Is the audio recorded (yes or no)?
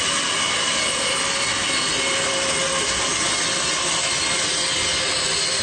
yes